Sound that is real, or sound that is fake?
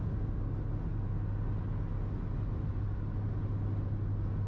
real